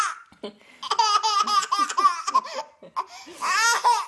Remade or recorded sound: recorded